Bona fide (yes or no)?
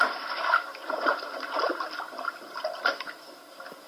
yes